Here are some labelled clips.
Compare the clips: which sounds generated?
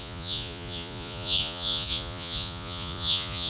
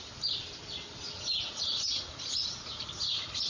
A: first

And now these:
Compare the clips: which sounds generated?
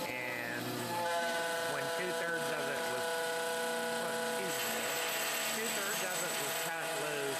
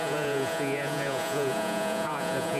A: second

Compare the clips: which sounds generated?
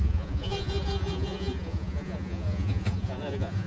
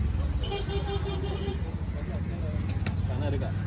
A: first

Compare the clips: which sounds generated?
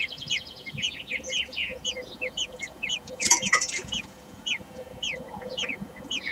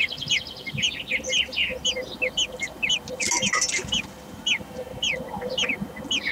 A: first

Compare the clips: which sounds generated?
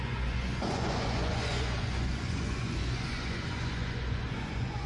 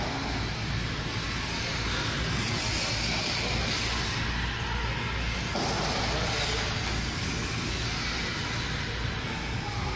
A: first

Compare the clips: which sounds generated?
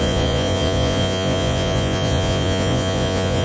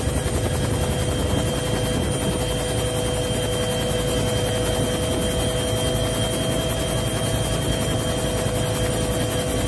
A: first